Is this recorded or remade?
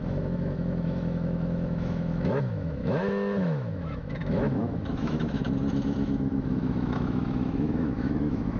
remade